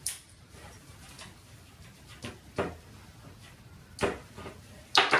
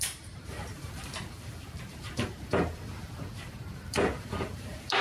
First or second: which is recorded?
first